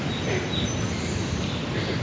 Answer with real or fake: real